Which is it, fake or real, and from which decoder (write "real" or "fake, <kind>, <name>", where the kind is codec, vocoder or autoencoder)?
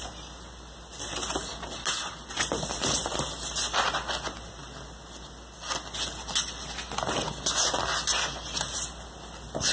real